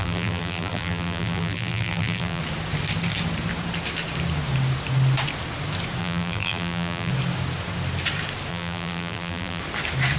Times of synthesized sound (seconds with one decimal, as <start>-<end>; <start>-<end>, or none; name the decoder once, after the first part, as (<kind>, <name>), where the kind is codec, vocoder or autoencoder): 0.0-2.4 (vocoder, BigVGAN v2); 6.0-7.1; 8.5-9.6